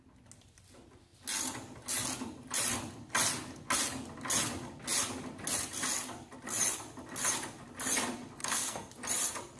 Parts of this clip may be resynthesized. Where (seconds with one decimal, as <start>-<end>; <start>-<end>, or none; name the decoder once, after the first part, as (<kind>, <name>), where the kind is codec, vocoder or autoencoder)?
8.4-8.9 (codec, SNAC)